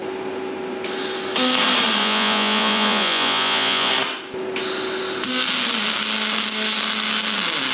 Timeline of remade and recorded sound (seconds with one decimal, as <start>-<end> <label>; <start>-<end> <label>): 0.0-2.0 recorded; 2.0-3.9 remade; 3.9-7.7 recorded